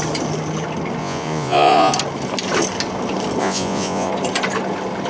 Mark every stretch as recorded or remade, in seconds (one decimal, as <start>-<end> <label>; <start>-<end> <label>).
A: 0.0-1.0 recorded; 1.0-1.9 remade; 1.9-3.4 recorded; 3.4-4.1 remade; 4.1-5.1 recorded